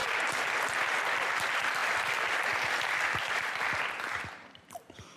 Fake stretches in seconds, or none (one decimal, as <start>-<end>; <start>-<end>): none